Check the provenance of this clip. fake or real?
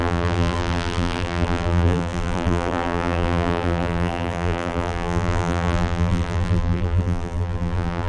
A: fake